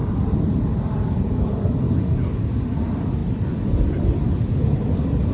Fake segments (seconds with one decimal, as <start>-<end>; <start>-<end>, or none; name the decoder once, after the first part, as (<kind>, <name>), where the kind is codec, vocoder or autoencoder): none